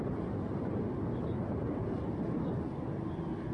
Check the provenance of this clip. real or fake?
real